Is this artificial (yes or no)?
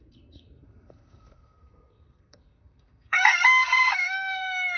yes